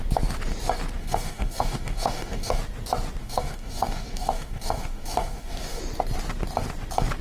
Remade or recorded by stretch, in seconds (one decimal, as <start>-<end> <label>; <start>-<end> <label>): 0.0-1.0 recorded; 1.0-2.6 remade; 2.6-3.2 recorded; 3.2-5.8 remade; 5.8-7.2 recorded